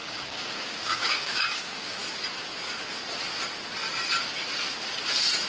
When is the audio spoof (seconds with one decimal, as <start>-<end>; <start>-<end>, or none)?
0.0-2.0